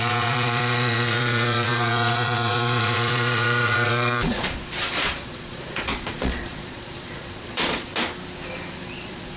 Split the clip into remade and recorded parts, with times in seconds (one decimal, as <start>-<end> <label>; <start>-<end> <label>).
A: 0.0-7.9 remade; 7.9-8.7 recorded; 8.7-9.4 remade